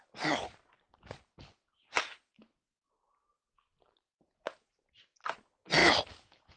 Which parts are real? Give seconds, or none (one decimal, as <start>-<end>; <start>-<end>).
0.0-5.8